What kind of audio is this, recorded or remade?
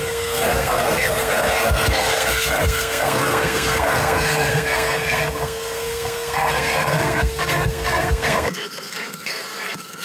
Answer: remade